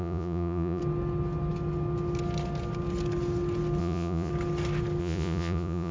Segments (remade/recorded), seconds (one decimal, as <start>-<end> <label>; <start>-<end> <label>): 0.0-0.8 remade; 0.8-3.8 recorded; 3.8-4.3 remade; 4.3-5.0 recorded; 5.0-5.9 remade